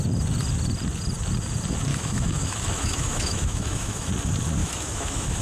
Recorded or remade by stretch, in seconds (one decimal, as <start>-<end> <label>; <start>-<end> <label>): 0.0-1.9 recorded; 1.9-4.1 remade; 4.1-4.6 recorded; 4.6-5.4 remade